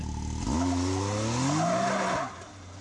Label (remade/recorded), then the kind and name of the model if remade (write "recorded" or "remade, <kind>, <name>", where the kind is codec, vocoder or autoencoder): recorded